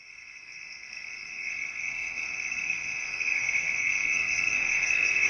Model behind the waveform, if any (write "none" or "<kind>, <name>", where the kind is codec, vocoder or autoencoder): codec, SNAC